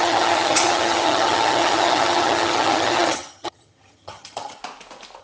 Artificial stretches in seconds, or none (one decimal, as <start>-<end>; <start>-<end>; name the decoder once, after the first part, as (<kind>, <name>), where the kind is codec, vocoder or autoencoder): 0.0-4.6 (vocoder, HiFi-GAN)